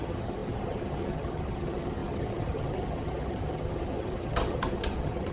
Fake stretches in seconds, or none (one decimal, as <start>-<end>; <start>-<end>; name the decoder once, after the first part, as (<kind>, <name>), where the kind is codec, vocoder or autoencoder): 0.0-5.3 (vocoder, HiFi-GAN)